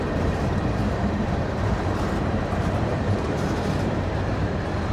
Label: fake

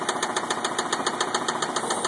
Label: real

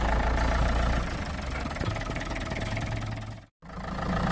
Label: fake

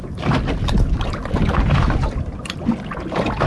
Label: real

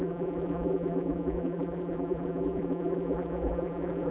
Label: fake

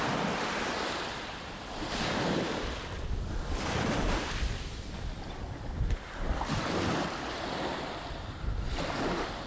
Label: fake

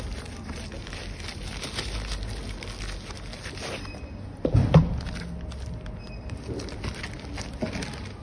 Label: real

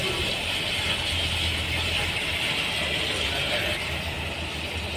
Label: real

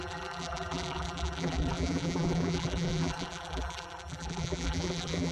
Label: fake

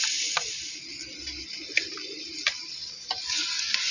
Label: real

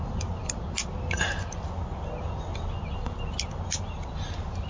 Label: real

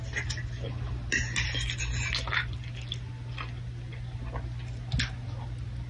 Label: real